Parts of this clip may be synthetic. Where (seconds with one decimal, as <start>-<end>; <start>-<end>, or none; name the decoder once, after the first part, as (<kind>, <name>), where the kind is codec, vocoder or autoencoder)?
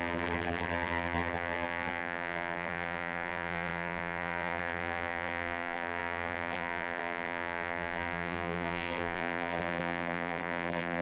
0.0-11.0 (vocoder, BigVGAN v2)